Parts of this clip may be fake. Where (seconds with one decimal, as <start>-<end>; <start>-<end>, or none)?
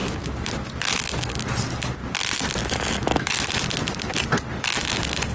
2.6-3.4